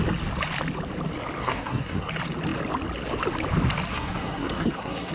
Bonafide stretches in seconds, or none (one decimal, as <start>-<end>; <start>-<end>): 0.0-1.4; 2.1-3.9